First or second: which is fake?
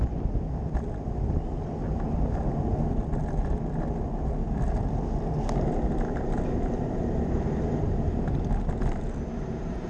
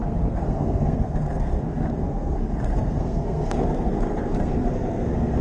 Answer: second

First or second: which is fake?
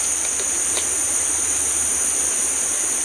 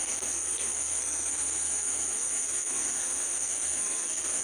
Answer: second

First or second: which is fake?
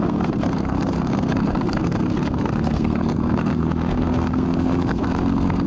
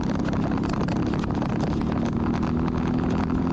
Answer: first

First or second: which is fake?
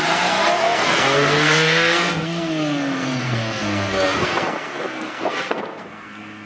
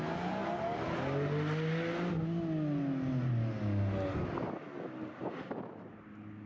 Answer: first